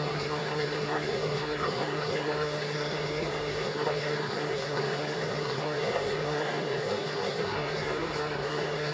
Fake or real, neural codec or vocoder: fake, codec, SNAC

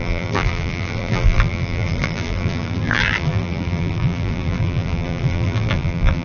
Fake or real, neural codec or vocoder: fake, vocoder, BigVGAN v2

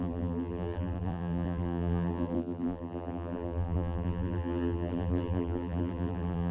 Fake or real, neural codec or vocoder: fake, vocoder, BigVGAN v2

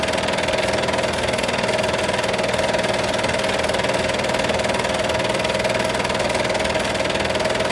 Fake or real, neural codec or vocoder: real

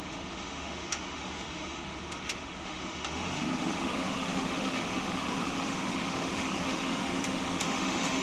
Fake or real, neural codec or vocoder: fake, autoencoder, DAC-VAE